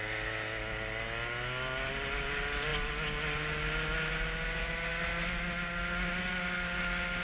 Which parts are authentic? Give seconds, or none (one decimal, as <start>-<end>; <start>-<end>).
0.0-7.2